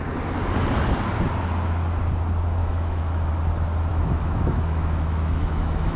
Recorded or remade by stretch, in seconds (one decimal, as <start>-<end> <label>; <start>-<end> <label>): 0.0-2.6 recorded; 2.6-3.3 remade; 3.3-3.9 recorded; 3.9-6.0 remade